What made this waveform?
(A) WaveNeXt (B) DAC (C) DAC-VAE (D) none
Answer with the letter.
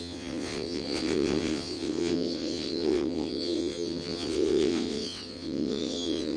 A